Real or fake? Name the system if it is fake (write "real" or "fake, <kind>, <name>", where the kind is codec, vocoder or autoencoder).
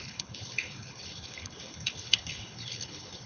fake, codec, HILCodec